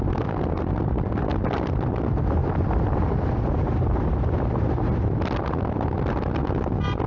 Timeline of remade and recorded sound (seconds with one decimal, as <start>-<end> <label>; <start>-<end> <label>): 0.0-2.4 recorded; 2.4-3.4 remade; 3.4-7.1 recorded

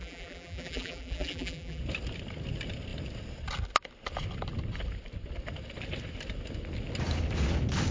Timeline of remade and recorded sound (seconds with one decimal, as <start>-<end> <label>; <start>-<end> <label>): 0.0-1.8 remade; 1.8-7.9 recorded

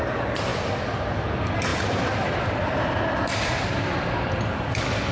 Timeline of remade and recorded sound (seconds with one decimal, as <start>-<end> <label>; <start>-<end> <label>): 0.0-0.5 recorded; 0.5-1.0 remade; 1.0-1.7 recorded; 1.7-5.1 remade

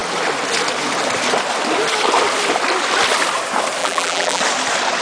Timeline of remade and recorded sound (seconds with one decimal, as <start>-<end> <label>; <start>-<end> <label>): 0.0-3.8 recorded; 3.8-4.4 remade; 4.4-5.0 recorded

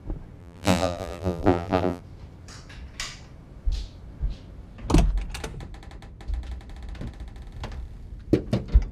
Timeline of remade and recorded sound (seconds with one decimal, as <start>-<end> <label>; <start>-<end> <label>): 0.0-0.4 recorded; 0.4-2.0 remade; 2.0-8.9 recorded

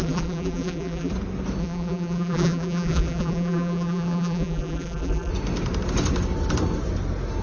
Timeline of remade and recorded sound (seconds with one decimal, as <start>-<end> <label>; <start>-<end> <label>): 0.0-1.1 remade; 1.1-1.6 recorded; 1.6-5.3 remade; 5.3-7.4 recorded

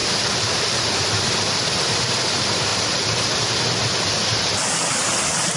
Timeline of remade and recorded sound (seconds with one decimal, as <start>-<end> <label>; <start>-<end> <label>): 0.0-0.6 recorded; 0.6-2.7 remade; 2.7-5.6 recorded